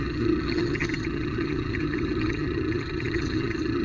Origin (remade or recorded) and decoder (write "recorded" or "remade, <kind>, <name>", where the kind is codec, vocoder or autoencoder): remade, vocoder, HiFi-GAN